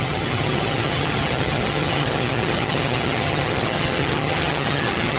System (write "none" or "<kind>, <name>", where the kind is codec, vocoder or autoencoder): vocoder, HiFi-GAN